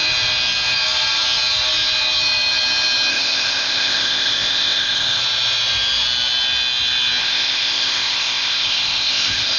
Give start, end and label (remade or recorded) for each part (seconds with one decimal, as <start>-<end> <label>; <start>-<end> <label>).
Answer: 0.0-3.1 recorded; 3.1-5.2 remade; 5.2-7.2 recorded; 7.2-9.6 remade